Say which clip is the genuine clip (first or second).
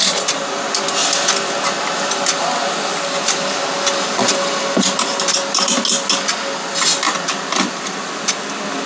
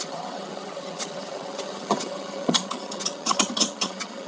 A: first